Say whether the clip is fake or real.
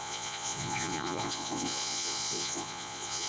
fake